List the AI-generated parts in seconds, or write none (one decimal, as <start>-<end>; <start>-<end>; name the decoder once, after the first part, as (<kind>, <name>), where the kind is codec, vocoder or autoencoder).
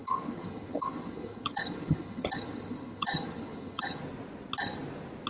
0.0-4.0 (vocoder, HiFi-GAN)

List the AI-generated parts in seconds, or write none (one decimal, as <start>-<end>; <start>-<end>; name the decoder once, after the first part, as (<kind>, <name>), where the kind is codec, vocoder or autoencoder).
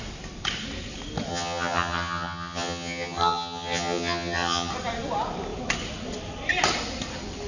1.3-4.7 (vocoder, HiFi-GAN)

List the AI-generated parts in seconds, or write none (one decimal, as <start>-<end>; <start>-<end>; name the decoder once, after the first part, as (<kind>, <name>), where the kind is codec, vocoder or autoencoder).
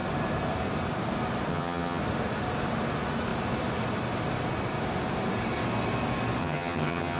1.5-2.0 (vocoder, HiFi-GAN); 6.4-7.2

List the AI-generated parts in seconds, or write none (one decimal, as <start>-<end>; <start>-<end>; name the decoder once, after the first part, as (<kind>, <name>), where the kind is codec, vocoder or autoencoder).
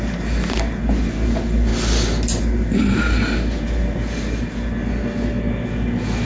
none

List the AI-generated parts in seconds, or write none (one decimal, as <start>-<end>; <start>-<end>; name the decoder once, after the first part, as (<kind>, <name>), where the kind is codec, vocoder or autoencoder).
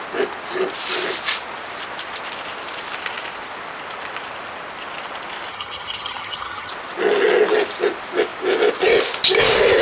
5.5-6.7 (vocoder, HiFi-GAN)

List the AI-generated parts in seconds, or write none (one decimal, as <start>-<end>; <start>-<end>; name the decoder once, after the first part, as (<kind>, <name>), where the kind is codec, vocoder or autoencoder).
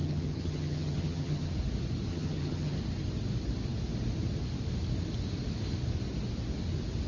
0.0-1.5 (vocoder, HiFi-GAN); 2.1-2.8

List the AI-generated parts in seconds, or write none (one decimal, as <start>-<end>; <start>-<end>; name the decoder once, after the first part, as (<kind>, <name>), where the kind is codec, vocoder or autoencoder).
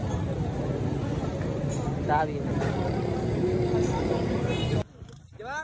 none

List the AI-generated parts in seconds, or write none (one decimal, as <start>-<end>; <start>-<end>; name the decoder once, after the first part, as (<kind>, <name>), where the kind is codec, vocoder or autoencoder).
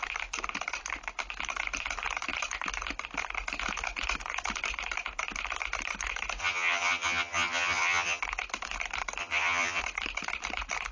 6.4-8.2 (vocoder, HiFi-GAN); 9.2-9.8